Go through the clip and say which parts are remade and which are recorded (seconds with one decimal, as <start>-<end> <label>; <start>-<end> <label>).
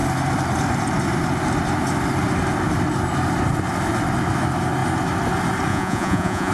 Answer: 0.0-5.7 recorded; 5.7-6.5 remade